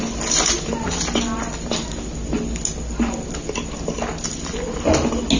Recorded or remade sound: recorded